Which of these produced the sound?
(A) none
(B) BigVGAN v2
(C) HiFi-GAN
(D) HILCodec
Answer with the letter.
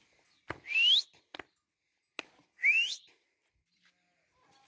A